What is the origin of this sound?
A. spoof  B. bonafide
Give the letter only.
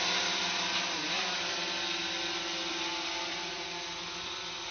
B